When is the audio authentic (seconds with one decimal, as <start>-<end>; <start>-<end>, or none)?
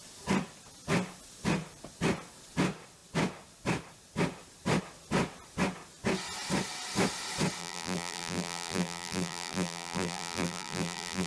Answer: 0.0-7.6